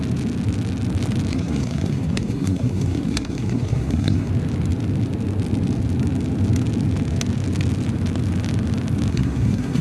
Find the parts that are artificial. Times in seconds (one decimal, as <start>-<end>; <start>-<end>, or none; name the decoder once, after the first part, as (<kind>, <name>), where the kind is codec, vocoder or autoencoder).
1.3-4.3 (codec, SNAC); 9.1-9.8